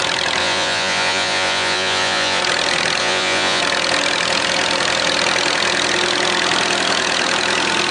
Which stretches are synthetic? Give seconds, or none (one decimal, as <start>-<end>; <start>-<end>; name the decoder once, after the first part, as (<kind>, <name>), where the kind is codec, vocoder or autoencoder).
0.4-2.4 (vocoder, Vocos); 3.0-3.6